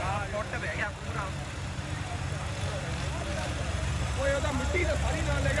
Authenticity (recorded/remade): remade